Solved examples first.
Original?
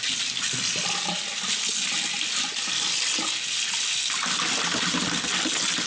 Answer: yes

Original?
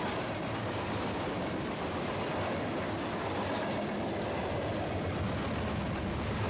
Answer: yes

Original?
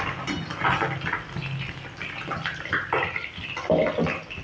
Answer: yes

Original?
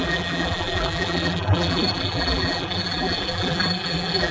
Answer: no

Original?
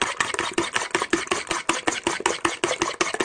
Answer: yes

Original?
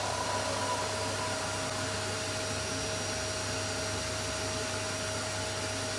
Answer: yes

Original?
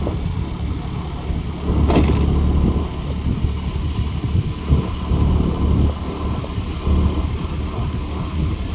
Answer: yes